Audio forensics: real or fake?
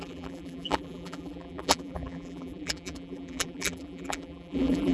fake